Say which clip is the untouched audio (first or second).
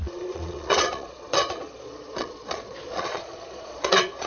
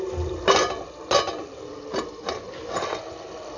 second